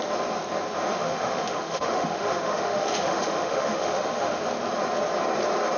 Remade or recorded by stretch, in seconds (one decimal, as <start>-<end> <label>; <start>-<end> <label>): 0.0-0.9 recorded; 0.9-4.4 remade; 4.4-5.8 recorded